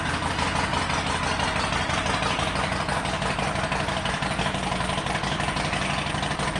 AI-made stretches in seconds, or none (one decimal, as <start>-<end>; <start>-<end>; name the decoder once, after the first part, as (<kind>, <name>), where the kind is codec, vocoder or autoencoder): none